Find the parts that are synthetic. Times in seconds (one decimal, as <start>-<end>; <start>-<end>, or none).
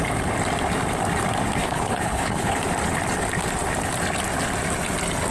1.6-2.6